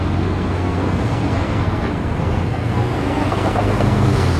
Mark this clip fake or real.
fake